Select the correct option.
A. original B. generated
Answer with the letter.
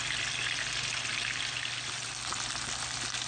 A